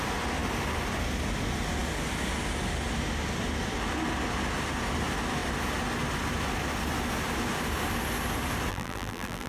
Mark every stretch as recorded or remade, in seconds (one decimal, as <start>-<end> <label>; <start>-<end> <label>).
0.0-8.7 recorded; 8.7-9.5 remade